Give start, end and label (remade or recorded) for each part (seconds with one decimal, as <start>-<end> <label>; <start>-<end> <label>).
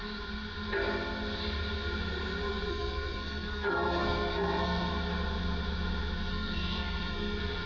0.0-2.7 recorded; 2.7-4.9 remade; 4.9-6.3 recorded; 6.3-7.7 remade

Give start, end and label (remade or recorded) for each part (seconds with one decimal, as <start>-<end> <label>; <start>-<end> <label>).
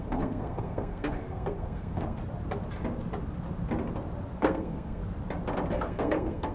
0.0-2.2 remade; 2.2-4.4 recorded; 4.4-5.0 remade; 5.0-5.7 recorded; 5.7-6.5 remade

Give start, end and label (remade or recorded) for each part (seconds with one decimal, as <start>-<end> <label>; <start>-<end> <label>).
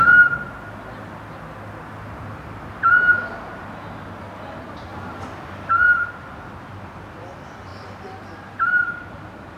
0.0-9.6 recorded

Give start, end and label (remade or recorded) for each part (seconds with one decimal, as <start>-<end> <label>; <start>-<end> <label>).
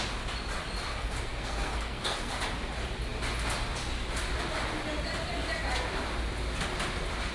0.0-0.9 recorded; 0.9-2.4 remade; 2.4-7.3 recorded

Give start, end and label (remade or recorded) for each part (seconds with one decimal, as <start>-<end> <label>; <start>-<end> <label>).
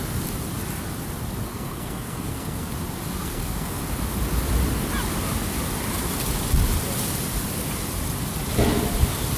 0.0-1.5 recorded; 1.5-2.7 remade; 2.7-3.2 recorded; 3.2-3.8 remade; 3.8-9.4 recorded